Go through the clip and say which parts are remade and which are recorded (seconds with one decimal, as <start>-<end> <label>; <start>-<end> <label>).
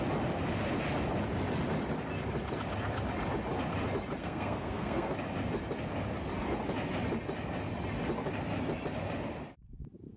0.0-4.2 recorded; 4.2-5.1 remade; 5.1-10.2 recorded